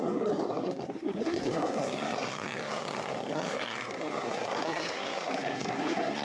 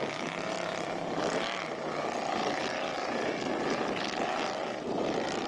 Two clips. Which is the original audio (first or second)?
second